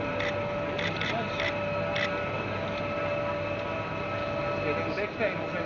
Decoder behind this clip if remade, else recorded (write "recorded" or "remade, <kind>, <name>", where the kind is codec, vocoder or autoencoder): recorded